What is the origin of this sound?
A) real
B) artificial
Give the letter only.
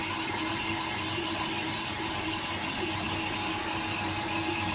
A